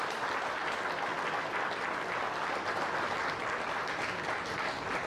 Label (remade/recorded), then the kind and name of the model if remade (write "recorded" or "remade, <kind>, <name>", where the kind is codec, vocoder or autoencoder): recorded